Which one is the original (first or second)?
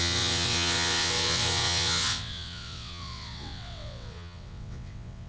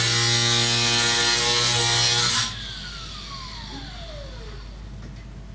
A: second